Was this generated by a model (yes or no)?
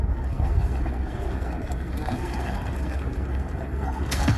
yes